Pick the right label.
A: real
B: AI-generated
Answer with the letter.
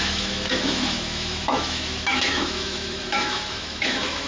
B